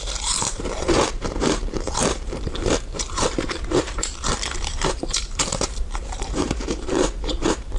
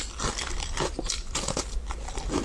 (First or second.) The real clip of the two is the second